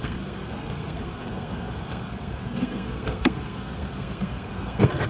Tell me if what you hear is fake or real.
fake